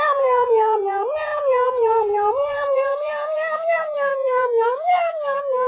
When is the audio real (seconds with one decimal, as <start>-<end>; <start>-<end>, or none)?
none